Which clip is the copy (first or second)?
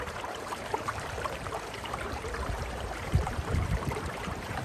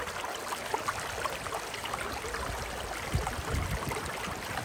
first